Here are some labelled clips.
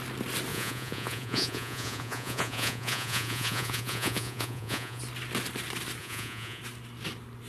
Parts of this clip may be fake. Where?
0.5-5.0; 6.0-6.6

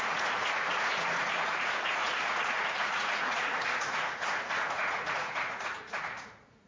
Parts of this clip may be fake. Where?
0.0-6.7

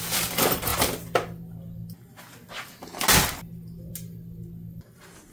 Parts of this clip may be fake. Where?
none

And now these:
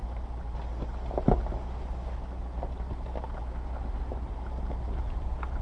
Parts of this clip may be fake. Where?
none